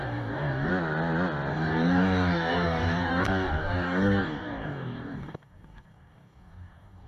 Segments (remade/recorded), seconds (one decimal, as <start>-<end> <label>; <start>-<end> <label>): 0.0-0.7 remade; 0.7-1.5 recorded; 1.5-7.1 remade